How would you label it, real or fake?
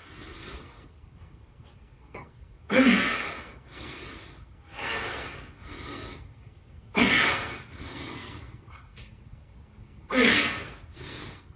fake